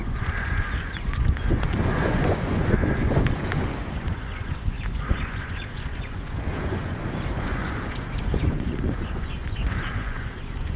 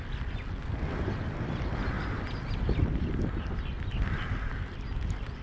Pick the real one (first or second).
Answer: second